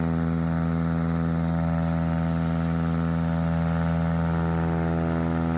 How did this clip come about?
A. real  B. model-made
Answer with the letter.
A